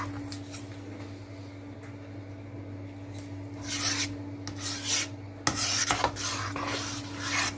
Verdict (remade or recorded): recorded